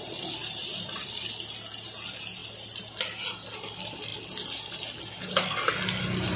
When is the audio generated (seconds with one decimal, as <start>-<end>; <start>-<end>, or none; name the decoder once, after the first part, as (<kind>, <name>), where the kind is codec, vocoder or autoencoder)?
0.4-1.3 (vocoder, BigVGAN v2)